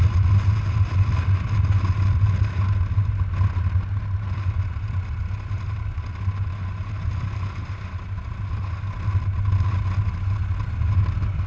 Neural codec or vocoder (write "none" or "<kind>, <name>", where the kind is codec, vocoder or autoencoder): none